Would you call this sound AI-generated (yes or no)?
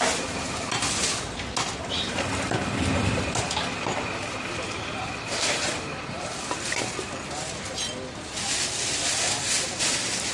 no